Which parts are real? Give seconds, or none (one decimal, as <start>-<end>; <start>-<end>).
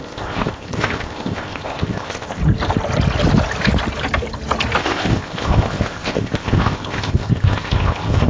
2.4-4.8